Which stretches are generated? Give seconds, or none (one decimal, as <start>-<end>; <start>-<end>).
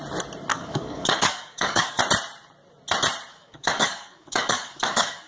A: 0.5-2.0; 3.3-5.3